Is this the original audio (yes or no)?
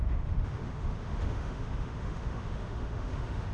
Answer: no